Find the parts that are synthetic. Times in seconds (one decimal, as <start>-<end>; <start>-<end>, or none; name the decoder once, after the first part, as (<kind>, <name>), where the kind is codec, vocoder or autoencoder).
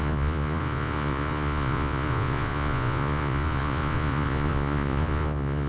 0.0-5.7 (vocoder, Vocos)